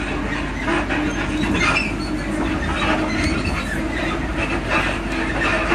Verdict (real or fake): real